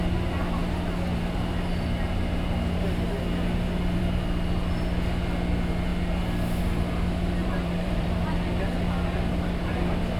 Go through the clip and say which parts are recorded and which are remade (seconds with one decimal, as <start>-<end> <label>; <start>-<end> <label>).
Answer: 0.0-7.4 recorded; 7.4-8.4 remade; 8.4-10.2 recorded